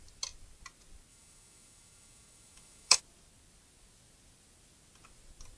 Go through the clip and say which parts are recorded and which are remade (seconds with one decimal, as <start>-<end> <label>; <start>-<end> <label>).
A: 0.0-1.1 recorded; 1.1-3.0 remade; 3.0-5.6 recorded